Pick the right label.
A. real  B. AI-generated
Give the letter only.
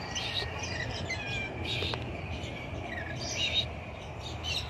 A